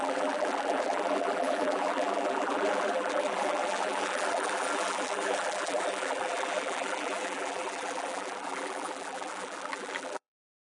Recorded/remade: remade